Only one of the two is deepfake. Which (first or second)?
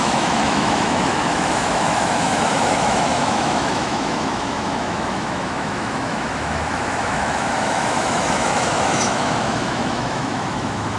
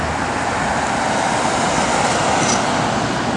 first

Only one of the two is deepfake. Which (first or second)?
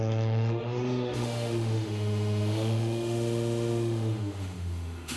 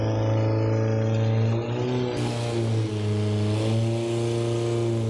first